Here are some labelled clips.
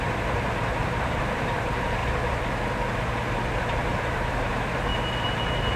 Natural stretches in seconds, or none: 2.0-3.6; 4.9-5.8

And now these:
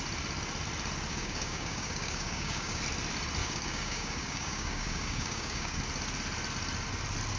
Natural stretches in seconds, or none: 0.0-1.1; 2.8-3.4; 5.8-7.4

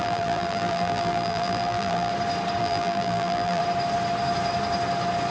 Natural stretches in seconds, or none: 2.1-2.6; 3.6-5.3

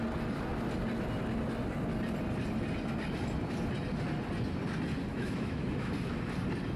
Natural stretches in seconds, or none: 0.0-5.1; 5.9-6.8